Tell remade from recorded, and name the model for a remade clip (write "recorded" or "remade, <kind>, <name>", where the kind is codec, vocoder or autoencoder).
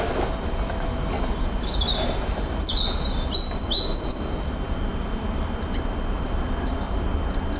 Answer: recorded